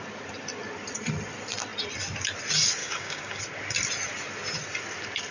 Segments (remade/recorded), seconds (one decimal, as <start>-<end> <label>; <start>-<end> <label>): 0.0-2.8 recorded; 2.8-3.4 remade; 3.4-5.3 recorded